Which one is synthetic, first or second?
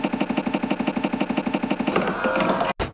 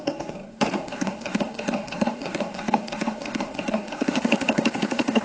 second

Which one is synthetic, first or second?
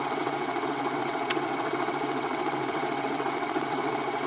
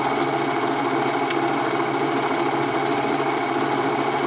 first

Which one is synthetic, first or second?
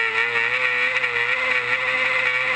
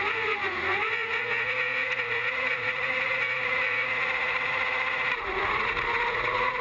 second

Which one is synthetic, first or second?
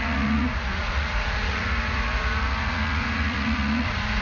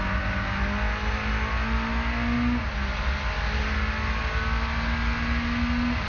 first